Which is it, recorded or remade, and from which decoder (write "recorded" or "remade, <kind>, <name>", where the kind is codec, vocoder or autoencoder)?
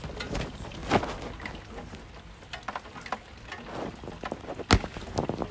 recorded